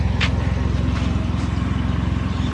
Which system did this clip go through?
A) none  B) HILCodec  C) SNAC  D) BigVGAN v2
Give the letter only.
A